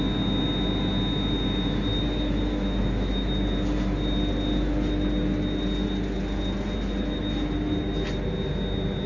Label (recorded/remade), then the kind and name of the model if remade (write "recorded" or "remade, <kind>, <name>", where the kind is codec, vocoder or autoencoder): recorded